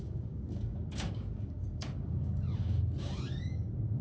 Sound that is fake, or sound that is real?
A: fake